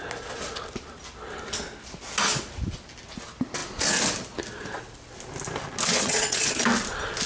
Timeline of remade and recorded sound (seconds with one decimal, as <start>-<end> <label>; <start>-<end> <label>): 0.0-5.9 recorded; 5.9-6.5 remade; 6.5-7.3 recorded